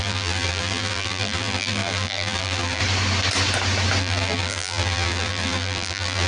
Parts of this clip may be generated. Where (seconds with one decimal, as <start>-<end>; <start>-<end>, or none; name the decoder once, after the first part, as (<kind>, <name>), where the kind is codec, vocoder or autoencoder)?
0.0-2.8 (vocoder, BigVGAN v2); 4.0-6.3

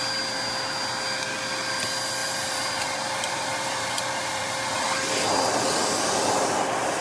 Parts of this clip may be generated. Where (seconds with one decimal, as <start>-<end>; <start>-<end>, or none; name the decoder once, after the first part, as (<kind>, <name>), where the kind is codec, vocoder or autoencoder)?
2.2-5.4 (vocoder, BigVGAN v2)

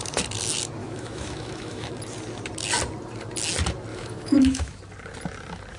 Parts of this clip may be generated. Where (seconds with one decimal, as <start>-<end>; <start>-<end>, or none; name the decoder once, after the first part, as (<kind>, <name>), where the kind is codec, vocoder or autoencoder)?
0.8-1.9 (autoencoder, DAC-VAE); 3.9-4.8

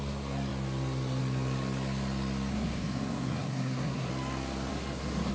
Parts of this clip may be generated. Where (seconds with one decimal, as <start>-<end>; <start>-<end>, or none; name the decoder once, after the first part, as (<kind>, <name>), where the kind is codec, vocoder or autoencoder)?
2.5-4.1 (codec, SNAC); 4.7-5.3

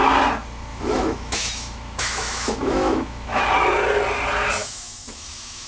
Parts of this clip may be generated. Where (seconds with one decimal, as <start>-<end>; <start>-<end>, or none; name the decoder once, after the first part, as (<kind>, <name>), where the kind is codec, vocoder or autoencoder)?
0.7-3.4 (autoencoder, DAC-VAE); 4.6-5.7